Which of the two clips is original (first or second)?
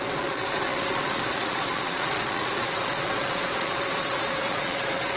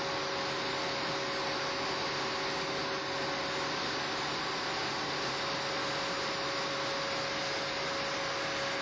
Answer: second